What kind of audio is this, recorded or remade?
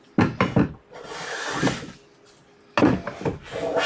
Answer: recorded